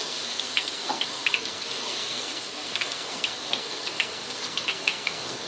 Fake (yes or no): yes